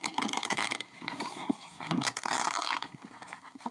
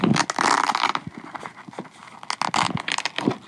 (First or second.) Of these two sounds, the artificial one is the first